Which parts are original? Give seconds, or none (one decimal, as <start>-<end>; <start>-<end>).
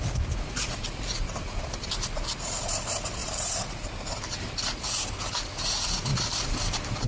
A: 0.0-3.2; 4.2-7.1